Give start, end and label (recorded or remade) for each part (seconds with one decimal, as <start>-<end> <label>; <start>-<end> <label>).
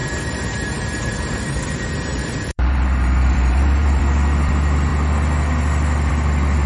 0.0-4.0 remade; 4.0-6.7 recorded